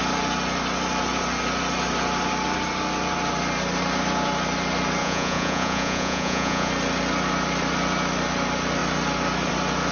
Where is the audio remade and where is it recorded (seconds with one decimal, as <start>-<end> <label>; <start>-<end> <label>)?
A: 0.0-5.0 recorded; 5.0-6.7 remade; 6.7-9.9 recorded